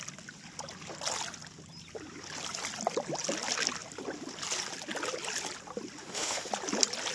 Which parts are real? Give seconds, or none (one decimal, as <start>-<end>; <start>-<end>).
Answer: 0.0-6.0; 6.5-7.1